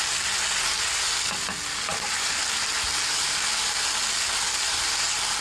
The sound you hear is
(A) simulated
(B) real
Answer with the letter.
B